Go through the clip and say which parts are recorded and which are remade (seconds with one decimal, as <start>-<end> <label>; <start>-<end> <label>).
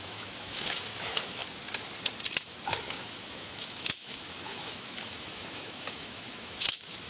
0.0-1.4 remade; 1.4-2.7 recorded; 2.7-7.1 remade